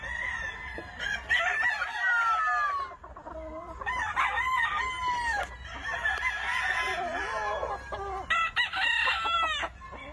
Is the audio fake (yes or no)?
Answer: no